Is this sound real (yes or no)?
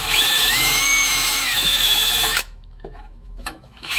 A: no